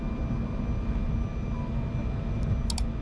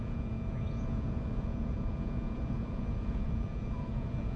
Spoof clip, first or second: second